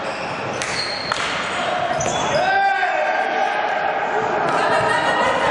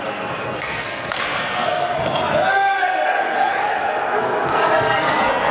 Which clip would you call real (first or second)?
first